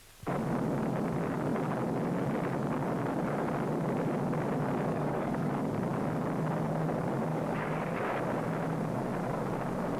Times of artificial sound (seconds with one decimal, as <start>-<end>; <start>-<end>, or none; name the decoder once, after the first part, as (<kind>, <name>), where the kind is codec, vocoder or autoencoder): 4.9-5.5 (codec, DAC); 7.3-7.8